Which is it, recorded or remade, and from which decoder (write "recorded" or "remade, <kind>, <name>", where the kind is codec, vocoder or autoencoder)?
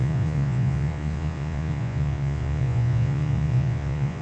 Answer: remade, vocoder, Vocos